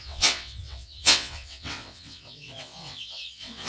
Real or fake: fake